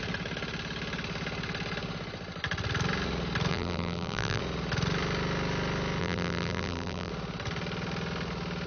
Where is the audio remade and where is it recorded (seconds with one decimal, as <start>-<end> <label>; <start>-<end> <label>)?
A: 0.0-3.5 recorded; 3.5-4.4 remade; 4.4-6.0 recorded; 6.0-7.1 remade; 7.1-8.7 recorded